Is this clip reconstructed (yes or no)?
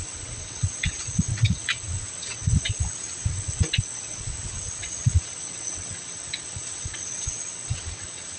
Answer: yes